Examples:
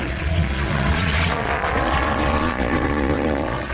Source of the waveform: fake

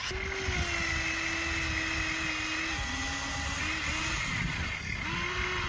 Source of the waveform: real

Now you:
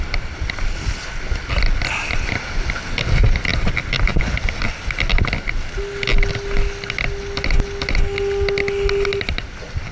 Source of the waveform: real